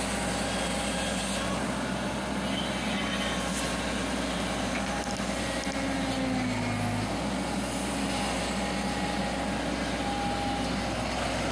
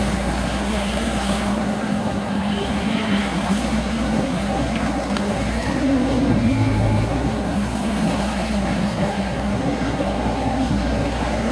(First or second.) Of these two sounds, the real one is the first